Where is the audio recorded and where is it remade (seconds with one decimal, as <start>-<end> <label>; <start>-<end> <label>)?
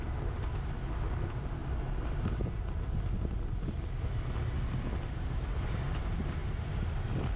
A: 0.0-7.4 recorded